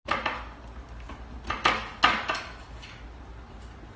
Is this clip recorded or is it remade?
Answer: recorded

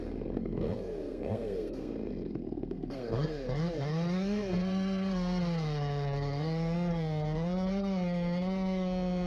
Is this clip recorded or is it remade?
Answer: remade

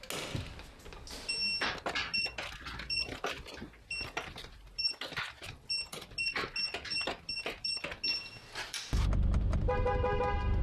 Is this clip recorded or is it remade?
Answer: recorded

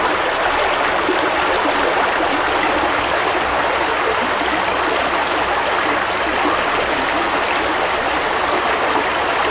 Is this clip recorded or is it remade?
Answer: recorded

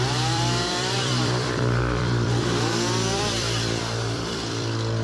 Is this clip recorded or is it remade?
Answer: remade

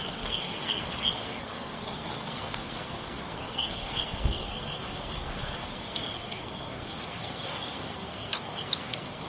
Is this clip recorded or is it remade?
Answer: remade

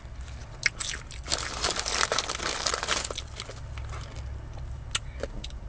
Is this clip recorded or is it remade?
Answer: recorded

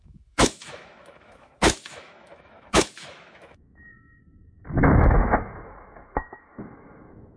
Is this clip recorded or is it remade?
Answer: remade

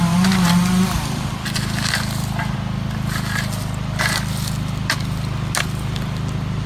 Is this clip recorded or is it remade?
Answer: recorded